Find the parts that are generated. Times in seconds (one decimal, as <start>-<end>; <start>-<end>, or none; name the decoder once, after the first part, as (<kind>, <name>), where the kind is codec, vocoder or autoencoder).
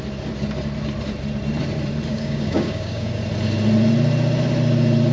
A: 2.1-3.2 (codec, DAC)